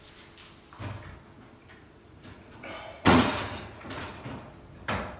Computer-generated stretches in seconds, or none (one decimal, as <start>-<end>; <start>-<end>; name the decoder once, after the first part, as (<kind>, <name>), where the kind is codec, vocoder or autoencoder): 1.6-4.1 (vocoder, Vocos)